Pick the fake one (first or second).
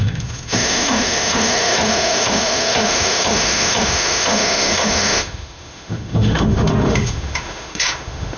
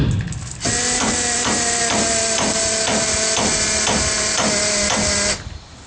first